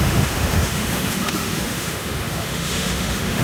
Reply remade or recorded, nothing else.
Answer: remade